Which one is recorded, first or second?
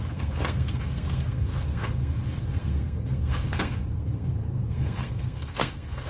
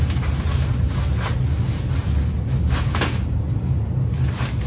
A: second